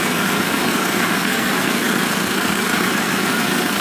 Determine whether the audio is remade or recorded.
remade